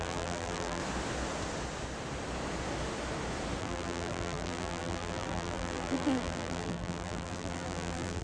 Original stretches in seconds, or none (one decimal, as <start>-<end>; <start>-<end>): 0.8-3.6